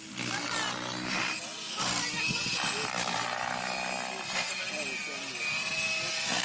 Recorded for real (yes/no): yes